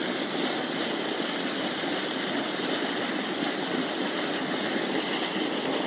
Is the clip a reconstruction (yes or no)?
no